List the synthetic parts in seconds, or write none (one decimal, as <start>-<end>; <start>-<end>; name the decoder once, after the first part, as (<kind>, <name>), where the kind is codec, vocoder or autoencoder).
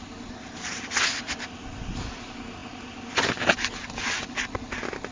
none